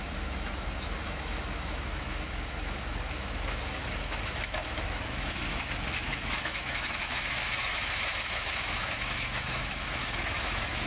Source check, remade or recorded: remade